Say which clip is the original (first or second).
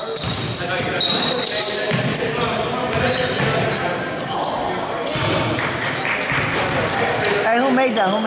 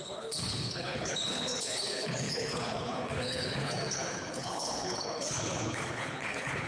first